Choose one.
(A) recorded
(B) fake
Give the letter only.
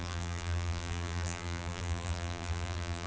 B